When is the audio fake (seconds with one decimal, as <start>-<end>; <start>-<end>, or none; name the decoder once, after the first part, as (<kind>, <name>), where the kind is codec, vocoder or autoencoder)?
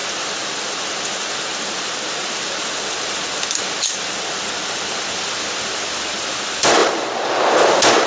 none